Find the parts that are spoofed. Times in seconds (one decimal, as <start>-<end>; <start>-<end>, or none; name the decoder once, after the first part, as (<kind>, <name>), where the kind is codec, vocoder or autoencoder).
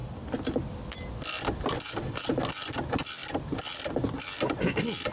none